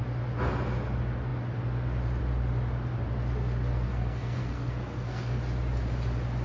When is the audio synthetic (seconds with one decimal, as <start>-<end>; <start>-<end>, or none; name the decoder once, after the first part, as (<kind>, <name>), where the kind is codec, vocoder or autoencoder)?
3.7-5.4 (codec, SNAC)